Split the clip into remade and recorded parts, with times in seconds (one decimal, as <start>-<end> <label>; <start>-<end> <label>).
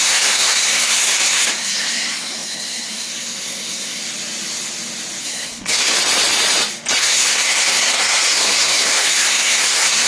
0.0-4.0 remade; 4.0-5.2 recorded; 5.2-6.0 remade; 6.0-7.0 recorded; 7.0-10.1 remade